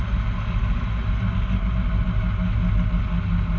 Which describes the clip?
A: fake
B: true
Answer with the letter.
B